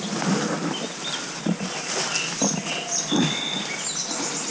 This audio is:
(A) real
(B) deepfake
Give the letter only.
A